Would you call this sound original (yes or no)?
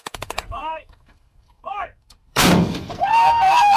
no